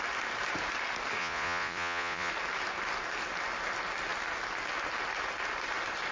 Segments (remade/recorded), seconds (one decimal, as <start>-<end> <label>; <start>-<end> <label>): 0.0-1.2 recorded; 1.2-2.3 remade; 2.3-6.1 recorded

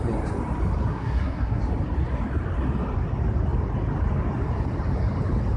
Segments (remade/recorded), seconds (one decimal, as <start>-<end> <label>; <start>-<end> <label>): 0.0-0.9 recorded; 0.9-1.6 remade; 1.6-5.6 recorded

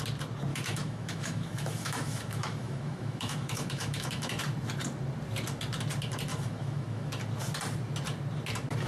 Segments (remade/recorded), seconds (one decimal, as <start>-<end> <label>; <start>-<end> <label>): 0.0-0.5 recorded; 0.5-4.4 remade; 4.4-6.3 recorded; 6.3-7.1 remade; 7.1-8.9 recorded

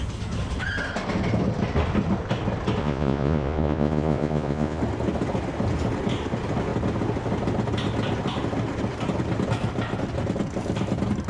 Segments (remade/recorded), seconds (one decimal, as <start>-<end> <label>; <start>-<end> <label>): 0.0-2.8 recorded; 2.8-4.8 remade; 4.8-11.3 recorded

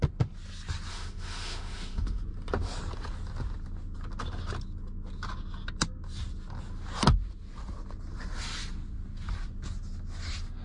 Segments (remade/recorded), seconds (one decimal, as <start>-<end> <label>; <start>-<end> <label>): 0.0-0.9 recorded; 0.9-2.2 remade; 2.2-10.6 recorded

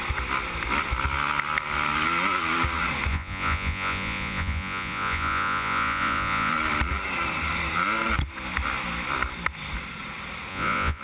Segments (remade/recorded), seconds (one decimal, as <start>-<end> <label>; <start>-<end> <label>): 0.0-3.1 recorded; 3.1-6.5 remade; 6.5-10.5 recorded; 10.5-11.0 remade

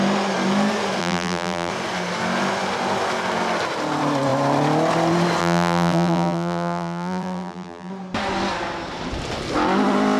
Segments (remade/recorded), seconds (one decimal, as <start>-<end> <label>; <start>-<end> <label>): 0.0-1.0 recorded; 1.0-1.7 remade; 1.7-5.4 recorded; 5.4-7.9 remade; 7.9-10.2 recorded